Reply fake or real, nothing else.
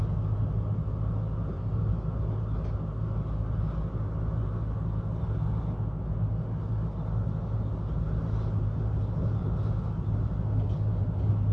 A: real